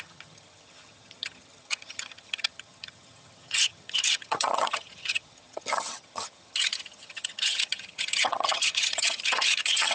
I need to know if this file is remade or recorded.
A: remade